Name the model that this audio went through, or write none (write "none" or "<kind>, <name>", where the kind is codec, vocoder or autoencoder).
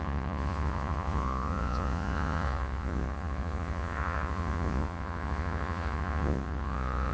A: vocoder, Vocos